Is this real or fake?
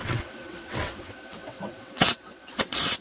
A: fake